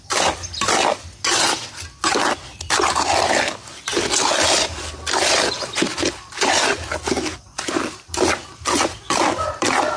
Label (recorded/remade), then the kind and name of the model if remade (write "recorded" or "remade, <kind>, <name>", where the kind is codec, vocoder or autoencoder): recorded